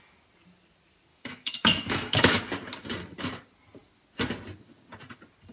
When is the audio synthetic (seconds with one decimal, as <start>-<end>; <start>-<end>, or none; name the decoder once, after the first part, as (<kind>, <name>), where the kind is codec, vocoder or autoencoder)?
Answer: 1.1-2.4 (autoencoder, DAC-VAE)